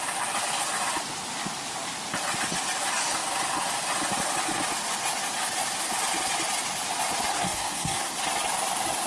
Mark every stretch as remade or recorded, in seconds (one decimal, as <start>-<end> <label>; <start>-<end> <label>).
0.0-7.3 recorded; 7.3-8.2 remade; 8.2-9.1 recorded